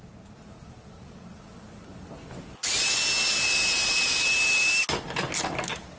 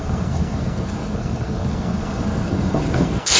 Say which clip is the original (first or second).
first